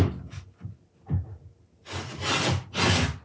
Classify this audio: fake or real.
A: real